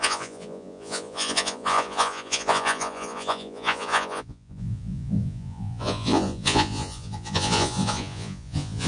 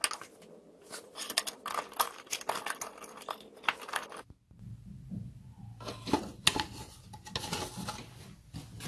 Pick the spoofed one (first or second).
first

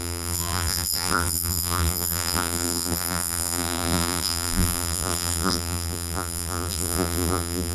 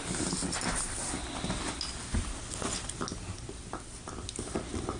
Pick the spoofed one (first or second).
first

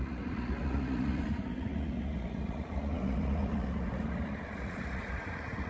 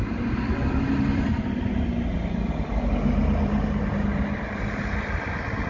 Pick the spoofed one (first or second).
first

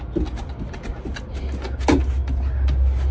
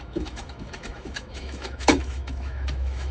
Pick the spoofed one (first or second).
second